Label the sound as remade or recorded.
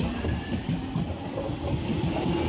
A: recorded